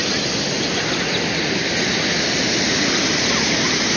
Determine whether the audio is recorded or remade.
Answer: recorded